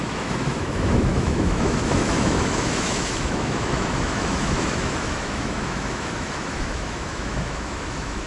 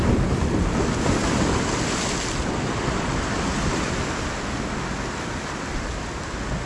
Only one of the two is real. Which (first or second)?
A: second